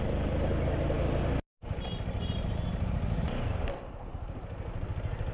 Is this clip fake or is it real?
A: real